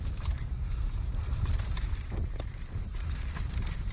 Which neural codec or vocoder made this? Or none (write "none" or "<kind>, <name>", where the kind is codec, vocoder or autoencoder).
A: vocoder, BigVGAN v2